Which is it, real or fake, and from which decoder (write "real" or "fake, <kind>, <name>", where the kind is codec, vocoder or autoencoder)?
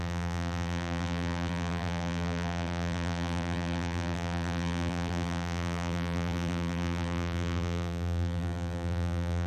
fake, vocoder, BigVGAN v2